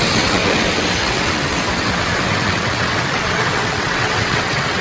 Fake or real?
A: fake